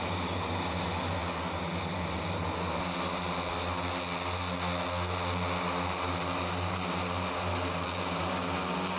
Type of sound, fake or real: real